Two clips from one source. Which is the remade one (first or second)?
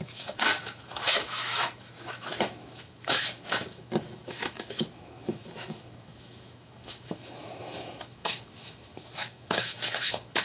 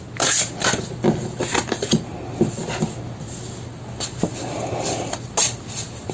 first